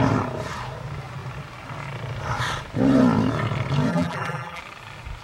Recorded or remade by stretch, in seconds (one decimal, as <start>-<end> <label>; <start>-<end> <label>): 0.0-3.9 recorded; 3.9-4.6 remade; 4.6-5.2 recorded